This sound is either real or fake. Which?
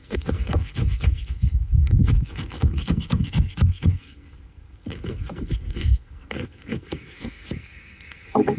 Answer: fake